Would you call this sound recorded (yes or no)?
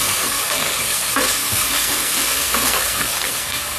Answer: no